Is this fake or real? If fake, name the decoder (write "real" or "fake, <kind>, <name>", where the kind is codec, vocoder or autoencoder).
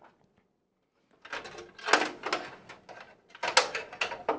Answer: real